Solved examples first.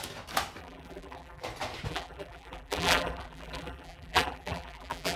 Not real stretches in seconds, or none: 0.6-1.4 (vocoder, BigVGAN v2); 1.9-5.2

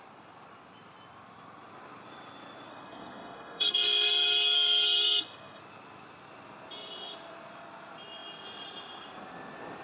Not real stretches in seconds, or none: 2.7-5.6 (codec, SNAC)

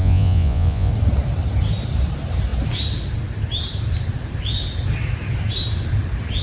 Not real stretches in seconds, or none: 0.0-0.9 (vocoder, Vocos)

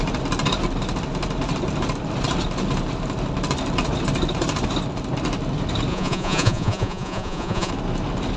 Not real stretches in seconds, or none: 5.9-7.7 (vocoder, Vocos)

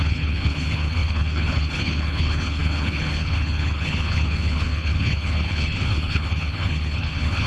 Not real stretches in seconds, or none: 0.0-7.5 (codec, HILCodec)

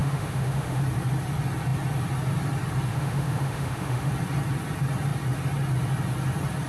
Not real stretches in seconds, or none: 0.0-0.8 (autoencoder, DAC-VAE); 2.9-4.1